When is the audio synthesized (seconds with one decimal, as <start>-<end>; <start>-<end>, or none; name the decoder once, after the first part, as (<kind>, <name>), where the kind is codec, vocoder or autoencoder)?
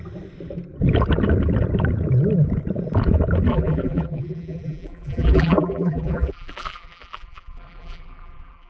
3.5-8.7 (vocoder, BigVGAN v2)